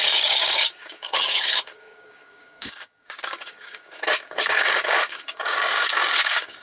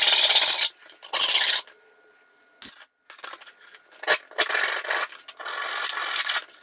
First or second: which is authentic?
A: second